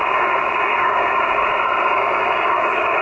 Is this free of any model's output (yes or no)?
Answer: yes